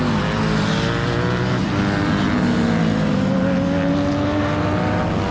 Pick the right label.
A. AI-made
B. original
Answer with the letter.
B